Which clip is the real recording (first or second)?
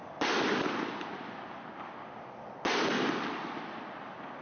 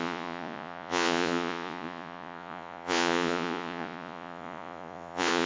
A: first